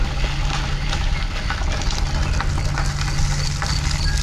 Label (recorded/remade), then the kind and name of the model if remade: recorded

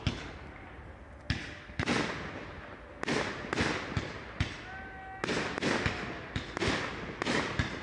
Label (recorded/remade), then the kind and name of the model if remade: recorded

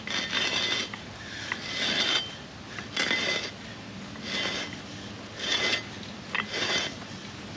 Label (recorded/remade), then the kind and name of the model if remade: recorded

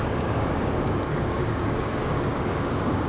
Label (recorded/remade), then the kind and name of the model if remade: remade, codec, DAC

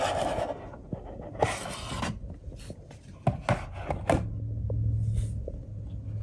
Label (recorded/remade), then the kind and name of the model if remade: recorded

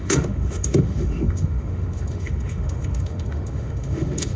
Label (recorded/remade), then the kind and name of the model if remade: remade, autoencoder, DAC-VAE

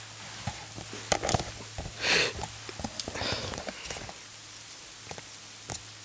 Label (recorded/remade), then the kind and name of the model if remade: recorded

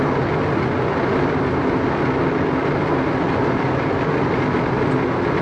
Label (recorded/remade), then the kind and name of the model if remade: recorded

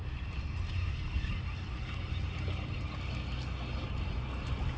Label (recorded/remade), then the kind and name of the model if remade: recorded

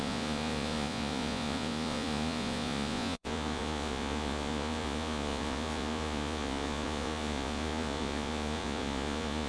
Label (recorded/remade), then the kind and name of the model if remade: remade, vocoder, Vocos